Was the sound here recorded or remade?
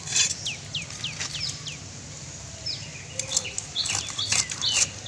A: recorded